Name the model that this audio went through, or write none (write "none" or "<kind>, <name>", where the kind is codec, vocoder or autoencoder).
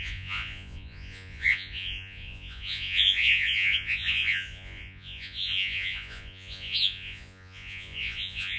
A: vocoder, Vocos